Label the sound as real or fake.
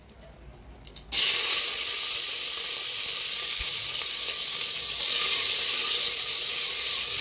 real